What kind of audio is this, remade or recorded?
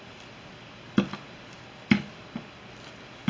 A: recorded